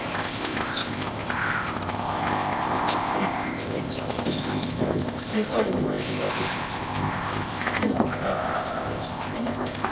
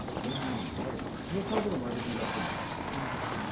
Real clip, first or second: second